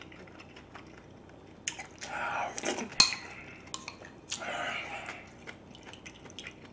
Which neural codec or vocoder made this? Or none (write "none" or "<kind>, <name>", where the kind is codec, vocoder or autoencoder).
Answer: none